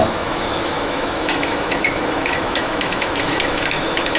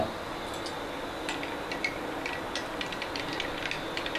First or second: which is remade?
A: first